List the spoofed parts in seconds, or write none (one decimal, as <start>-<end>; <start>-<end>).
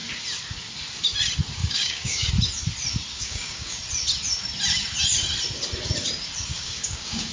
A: 1.6-2.3; 3.1-3.8; 6.5-7.3